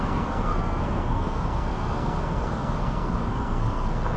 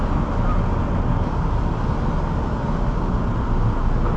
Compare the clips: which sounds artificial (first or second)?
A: first